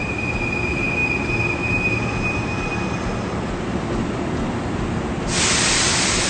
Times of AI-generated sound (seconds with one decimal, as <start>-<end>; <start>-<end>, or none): none